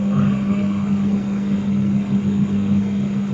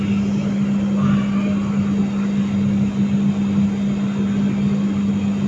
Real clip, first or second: second